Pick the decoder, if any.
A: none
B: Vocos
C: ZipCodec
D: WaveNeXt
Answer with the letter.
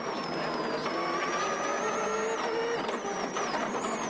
A